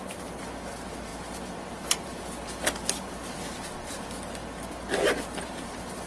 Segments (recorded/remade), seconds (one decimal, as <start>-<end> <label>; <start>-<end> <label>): 0.0-6.1 recorded